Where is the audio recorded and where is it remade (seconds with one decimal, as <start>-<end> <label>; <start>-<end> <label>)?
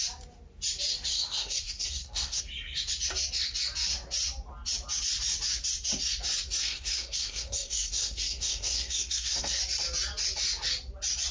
0.0-1.1 recorded; 1.1-2.4 remade; 2.4-6.6 recorded; 6.6-9.6 remade; 9.6-11.3 recorded